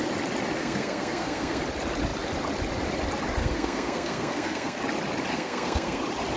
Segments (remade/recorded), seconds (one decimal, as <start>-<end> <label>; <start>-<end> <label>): 0.0-0.6 recorded; 0.6-1.6 remade; 1.6-3.4 recorded; 3.4-4.8 remade; 4.8-5.3 recorded; 5.3-6.0 remade; 6.0-6.4 recorded